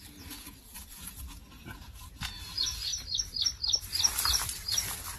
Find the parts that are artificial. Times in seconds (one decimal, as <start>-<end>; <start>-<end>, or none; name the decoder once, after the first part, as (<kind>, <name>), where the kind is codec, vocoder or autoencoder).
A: 0.0-2.9 (vocoder, Vocos)